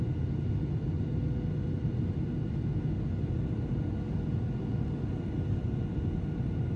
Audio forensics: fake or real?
real